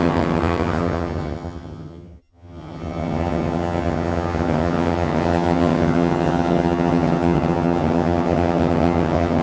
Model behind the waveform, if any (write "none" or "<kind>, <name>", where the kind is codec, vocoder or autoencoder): vocoder, HiFi-GAN